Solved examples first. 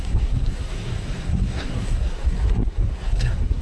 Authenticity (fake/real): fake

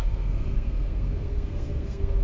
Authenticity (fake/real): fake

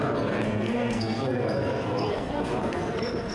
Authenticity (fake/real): fake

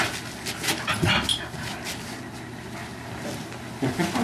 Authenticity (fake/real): real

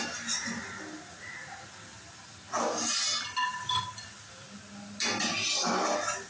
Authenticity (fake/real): real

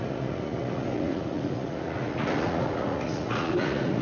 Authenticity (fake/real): fake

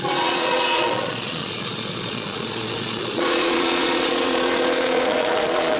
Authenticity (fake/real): fake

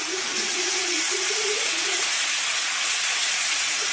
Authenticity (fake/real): fake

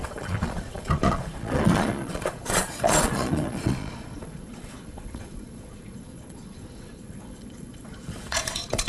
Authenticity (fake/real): fake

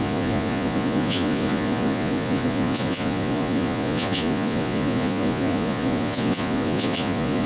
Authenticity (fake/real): fake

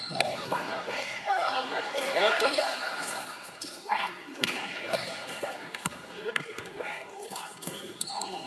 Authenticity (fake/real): fake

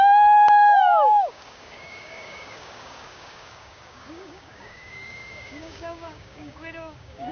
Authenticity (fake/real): fake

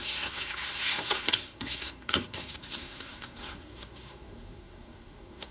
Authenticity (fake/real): fake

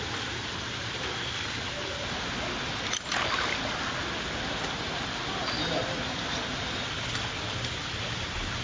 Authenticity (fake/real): real